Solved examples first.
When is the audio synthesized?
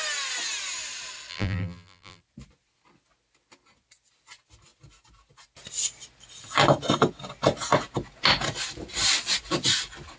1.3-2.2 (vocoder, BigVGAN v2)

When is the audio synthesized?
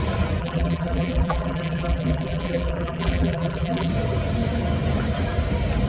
0.4-3.9 (vocoder, BigVGAN v2)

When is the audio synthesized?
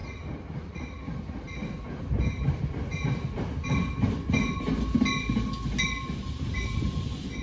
none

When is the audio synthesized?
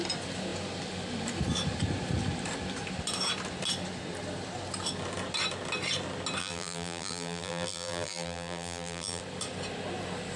6.4-9.2 (vocoder, BigVGAN v2)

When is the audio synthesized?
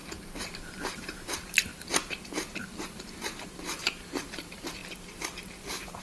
0.0-4.8 (vocoder, BigVGAN v2); 5.6-6.0